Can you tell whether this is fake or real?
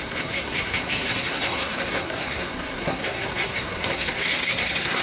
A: fake